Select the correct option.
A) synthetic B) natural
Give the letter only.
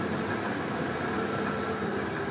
B